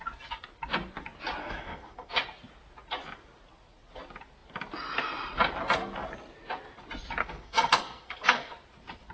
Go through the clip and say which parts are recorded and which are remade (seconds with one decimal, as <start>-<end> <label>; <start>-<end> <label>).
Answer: 0.0-1.4 recorded; 1.4-2.1 remade; 2.1-7.2 recorded; 7.2-8.5 remade; 8.5-9.1 recorded